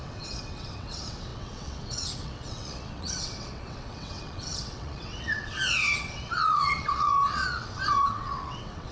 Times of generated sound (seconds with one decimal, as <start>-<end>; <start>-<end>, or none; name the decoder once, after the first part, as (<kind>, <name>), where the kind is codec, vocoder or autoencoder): 0.0-8.9 (vocoder, WaveNeXt)